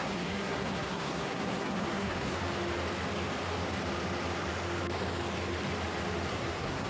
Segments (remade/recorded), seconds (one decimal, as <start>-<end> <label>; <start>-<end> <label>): 0.0-2.4 remade; 2.4-6.3 recorded; 6.3-6.9 remade